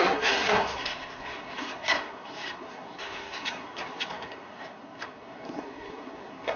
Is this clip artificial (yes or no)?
yes